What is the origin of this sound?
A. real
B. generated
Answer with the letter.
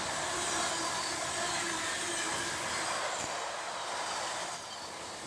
A